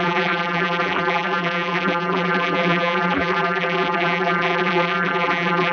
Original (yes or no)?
no